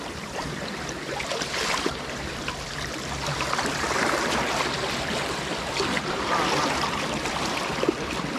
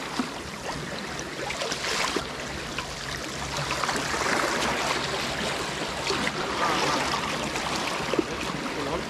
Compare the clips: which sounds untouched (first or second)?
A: second